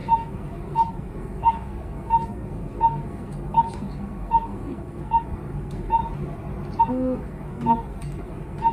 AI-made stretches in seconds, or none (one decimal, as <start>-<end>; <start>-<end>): 0.0-6.0; 6.8-8.7